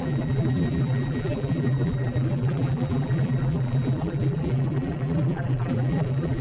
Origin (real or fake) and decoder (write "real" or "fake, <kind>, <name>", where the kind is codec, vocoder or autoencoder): fake, vocoder, BigVGAN v2